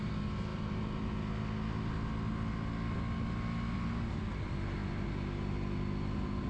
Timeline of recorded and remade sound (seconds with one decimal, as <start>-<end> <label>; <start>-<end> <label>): 0.0-6.5 recorded